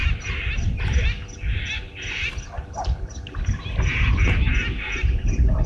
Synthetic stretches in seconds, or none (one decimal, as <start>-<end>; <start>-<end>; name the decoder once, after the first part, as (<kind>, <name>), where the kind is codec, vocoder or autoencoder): 0.0-1.0 (vocoder, BigVGAN v2)